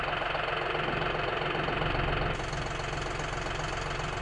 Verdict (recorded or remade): recorded